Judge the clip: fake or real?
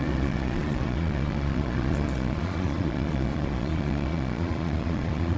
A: fake